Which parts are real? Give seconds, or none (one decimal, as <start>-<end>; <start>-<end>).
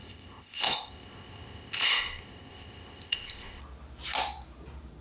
3.6-5.0